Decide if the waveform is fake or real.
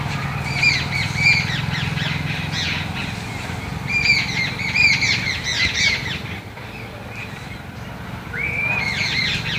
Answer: real